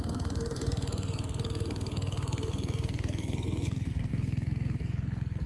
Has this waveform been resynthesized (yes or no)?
yes